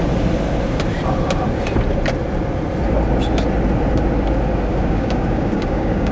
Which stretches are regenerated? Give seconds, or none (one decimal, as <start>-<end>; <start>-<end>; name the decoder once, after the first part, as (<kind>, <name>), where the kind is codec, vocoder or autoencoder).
4.7-6.1 (codec, DAC)